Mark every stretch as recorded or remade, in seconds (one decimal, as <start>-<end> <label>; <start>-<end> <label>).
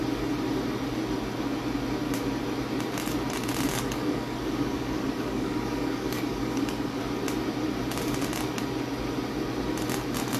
0.0-3.7 recorded; 3.7-7.0 remade; 7.0-10.4 recorded